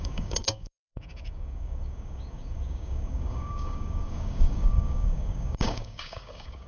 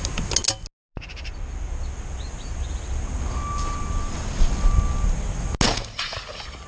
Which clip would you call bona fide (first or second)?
second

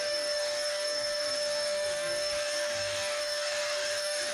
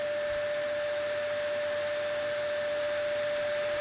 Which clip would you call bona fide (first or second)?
second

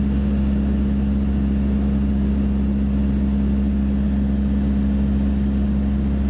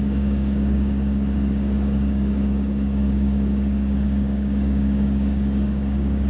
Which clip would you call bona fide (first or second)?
first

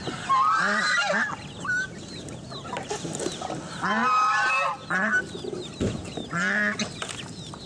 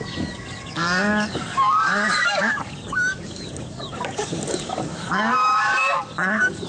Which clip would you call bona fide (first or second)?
first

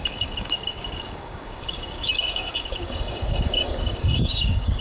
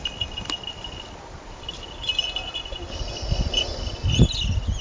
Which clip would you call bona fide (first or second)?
second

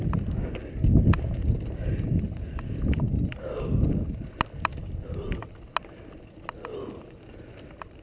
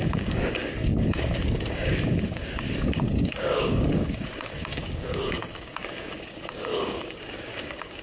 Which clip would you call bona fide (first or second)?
first